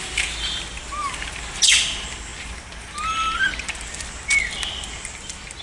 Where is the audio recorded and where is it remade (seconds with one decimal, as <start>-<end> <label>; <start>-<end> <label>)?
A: 0.0-5.6 recorded